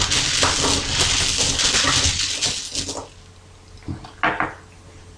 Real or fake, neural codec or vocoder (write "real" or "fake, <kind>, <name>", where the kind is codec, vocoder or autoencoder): real